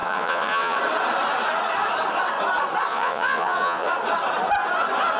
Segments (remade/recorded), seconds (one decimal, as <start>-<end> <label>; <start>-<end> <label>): 0.0-0.8 remade; 0.8-2.9 recorded; 2.9-3.9 remade; 3.9-5.2 recorded